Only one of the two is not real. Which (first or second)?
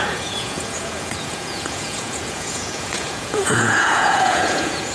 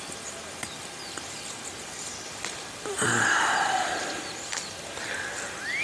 first